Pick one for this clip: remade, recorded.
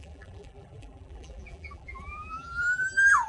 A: remade